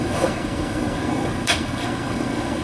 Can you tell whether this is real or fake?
fake